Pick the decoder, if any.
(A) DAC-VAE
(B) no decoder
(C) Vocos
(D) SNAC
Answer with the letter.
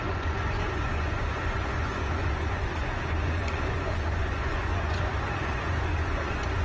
C